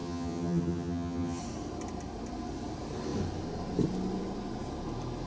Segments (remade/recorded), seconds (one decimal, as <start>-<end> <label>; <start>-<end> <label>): 0.0-1.4 remade; 1.4-5.3 recorded